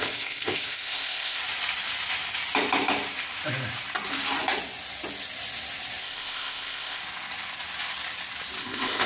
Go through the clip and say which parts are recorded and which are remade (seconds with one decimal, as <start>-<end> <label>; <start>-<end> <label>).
0.0-1.4 remade; 1.4-6.0 recorded; 6.0-7.0 remade; 7.0-8.6 recorded; 8.6-9.1 remade